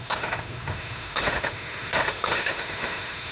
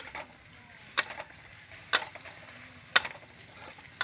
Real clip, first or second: second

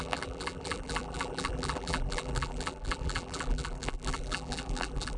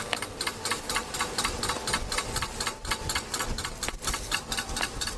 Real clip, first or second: second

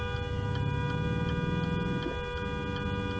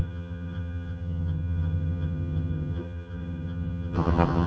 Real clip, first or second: first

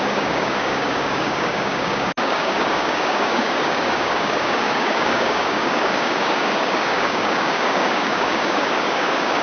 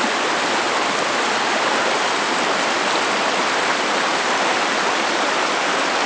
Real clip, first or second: second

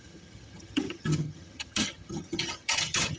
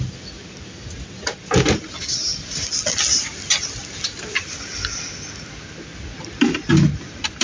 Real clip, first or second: second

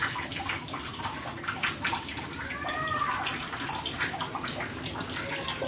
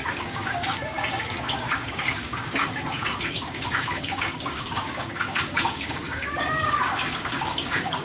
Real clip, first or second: first